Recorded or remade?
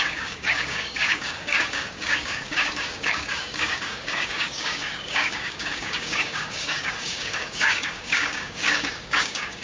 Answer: remade